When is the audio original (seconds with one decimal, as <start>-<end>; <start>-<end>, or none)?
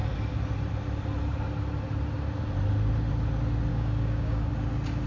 0.0-3.7; 4.5-5.1